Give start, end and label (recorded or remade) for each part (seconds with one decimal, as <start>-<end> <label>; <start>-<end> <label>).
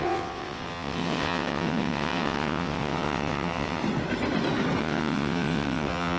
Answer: 0.0-3.8 remade; 3.8-4.8 recorded; 4.8-6.2 remade